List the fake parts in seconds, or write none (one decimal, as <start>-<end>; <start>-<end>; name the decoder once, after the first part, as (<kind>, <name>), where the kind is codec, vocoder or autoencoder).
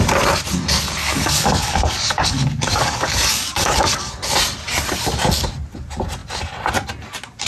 1.0-4.1 (codec, DAC)